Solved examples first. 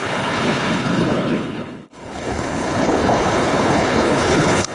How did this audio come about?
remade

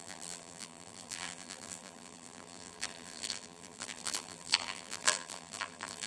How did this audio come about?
remade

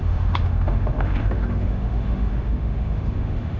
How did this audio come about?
remade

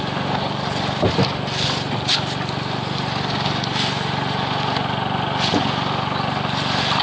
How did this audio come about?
recorded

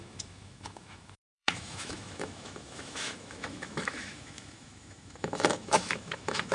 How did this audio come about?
remade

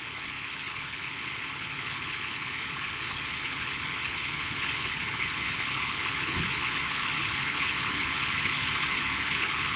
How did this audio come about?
remade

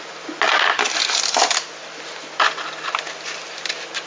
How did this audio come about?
recorded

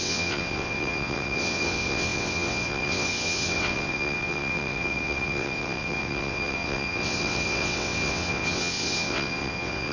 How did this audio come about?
remade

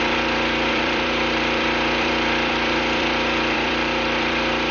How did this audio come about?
remade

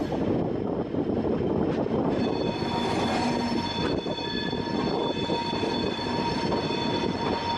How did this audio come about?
recorded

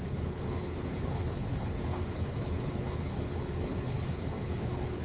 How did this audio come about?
remade